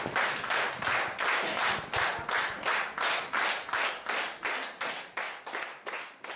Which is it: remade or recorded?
recorded